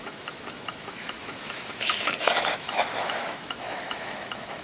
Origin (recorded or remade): remade